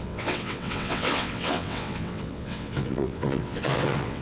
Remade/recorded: remade